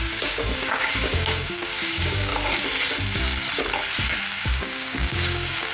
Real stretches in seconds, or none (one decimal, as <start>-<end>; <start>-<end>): 2.3-4.4